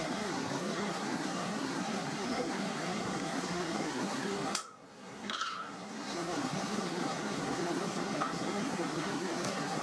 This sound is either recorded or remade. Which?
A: remade